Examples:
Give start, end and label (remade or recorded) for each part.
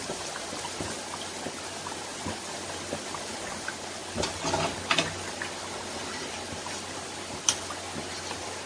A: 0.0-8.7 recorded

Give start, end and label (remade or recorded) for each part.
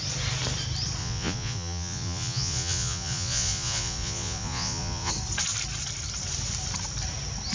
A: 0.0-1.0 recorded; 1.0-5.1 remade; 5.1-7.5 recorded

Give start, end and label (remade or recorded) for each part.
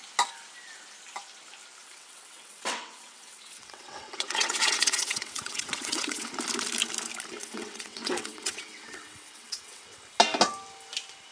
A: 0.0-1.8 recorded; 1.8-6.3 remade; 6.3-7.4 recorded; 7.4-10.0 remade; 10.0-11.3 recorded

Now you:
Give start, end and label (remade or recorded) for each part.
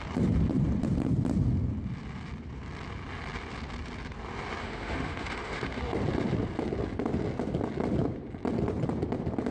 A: 0.0-4.6 recorded; 4.6-5.8 remade; 5.8-9.5 recorded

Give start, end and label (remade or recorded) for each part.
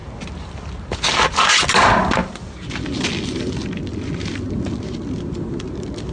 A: 0.0-6.1 recorded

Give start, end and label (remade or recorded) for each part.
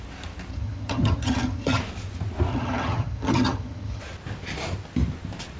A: 0.0-0.5 recorded; 0.5-1.8 remade; 1.8-2.5 recorded; 2.5-4.0 remade; 4.0-5.6 recorded